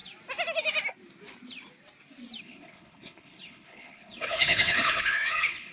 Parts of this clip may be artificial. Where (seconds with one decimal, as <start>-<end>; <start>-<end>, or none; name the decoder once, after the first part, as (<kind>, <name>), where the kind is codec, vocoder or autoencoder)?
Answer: 2.4-5.7 (codec, HILCodec)